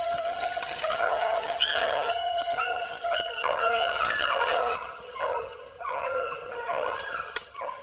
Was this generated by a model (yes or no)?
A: yes